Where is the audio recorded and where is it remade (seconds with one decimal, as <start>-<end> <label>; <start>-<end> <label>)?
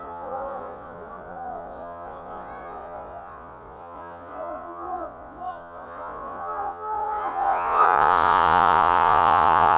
0.0-9.8 remade